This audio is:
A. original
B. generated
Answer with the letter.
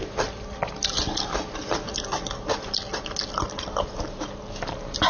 A